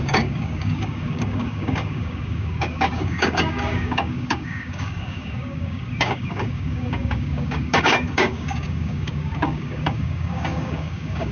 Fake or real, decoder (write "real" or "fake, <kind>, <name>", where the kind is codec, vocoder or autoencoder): fake, codec, DAC